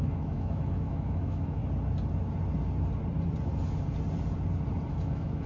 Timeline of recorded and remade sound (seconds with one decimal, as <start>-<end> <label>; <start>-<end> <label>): 0.0-1.6 remade; 1.6-4.9 recorded; 4.9-5.5 remade